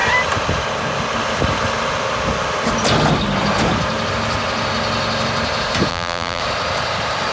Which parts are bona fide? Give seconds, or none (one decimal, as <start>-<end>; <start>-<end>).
0.0-5.9; 6.4-7.3